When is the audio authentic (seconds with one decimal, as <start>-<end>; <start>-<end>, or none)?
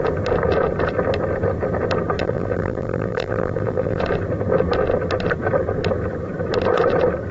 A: 0.0-2.2; 4.0-7.3